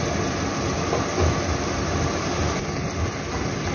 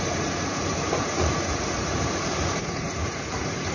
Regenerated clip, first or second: second